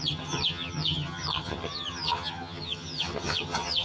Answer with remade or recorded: remade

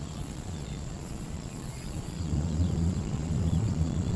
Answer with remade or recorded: remade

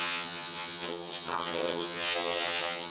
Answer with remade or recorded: remade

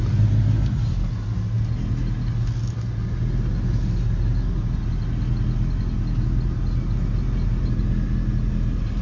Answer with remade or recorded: recorded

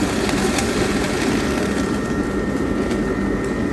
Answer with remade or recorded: remade